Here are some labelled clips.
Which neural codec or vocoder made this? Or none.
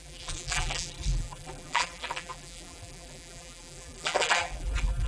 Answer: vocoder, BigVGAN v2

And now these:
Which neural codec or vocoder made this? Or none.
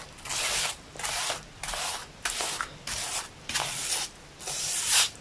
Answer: none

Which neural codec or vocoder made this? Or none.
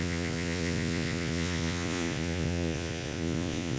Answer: vocoder, Vocos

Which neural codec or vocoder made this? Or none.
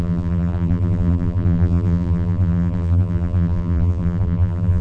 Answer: vocoder, BigVGAN v2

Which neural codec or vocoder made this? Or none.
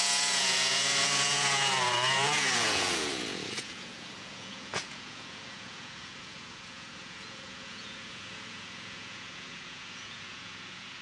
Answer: vocoder, Vocos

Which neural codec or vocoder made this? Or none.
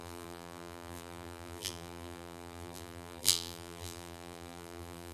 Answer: vocoder, BigVGAN v2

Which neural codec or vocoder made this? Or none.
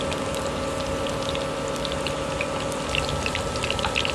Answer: none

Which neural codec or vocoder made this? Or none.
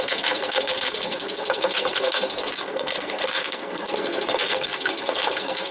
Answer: codec, SNAC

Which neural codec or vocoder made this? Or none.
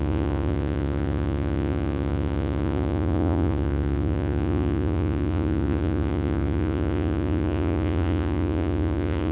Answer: vocoder, Vocos